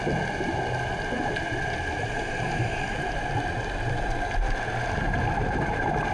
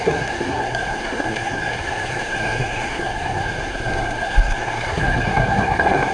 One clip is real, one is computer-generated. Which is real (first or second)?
first